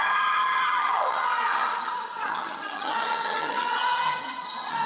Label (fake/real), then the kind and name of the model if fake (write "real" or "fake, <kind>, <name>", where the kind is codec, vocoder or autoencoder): fake, vocoder, HiFi-GAN